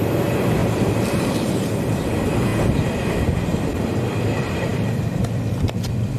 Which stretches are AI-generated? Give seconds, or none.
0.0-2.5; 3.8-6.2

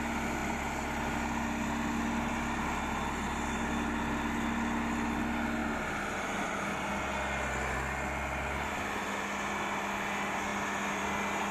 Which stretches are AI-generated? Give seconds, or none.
none

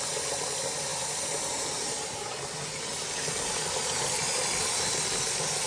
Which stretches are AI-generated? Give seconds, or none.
0.9-2.4

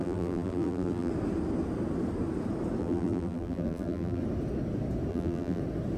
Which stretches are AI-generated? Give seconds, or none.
0.0-1.1; 2.8-4.2; 5.1-5.6

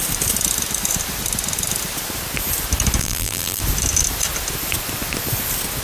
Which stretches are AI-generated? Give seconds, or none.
3.0-3.6